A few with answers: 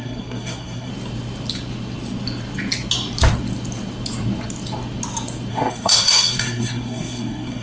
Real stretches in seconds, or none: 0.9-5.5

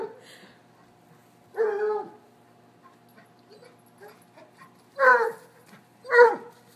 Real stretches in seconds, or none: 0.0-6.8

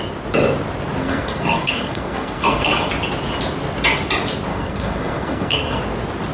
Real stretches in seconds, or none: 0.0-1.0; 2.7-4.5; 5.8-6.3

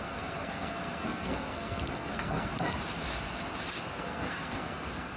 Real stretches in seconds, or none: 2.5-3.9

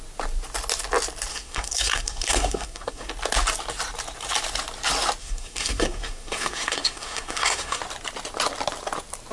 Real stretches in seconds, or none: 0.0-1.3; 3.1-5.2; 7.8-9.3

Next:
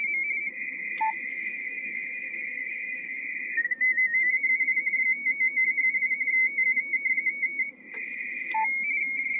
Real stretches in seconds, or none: 0.0-1.3; 3.2-9.4